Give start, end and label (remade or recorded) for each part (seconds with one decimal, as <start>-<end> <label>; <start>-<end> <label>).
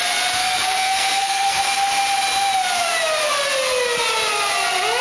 0.0-0.4 recorded; 0.4-1.6 remade; 1.6-5.0 recorded